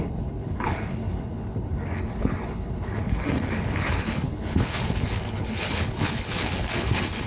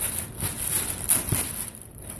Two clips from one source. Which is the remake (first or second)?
first